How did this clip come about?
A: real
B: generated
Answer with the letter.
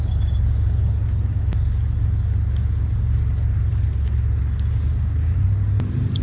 A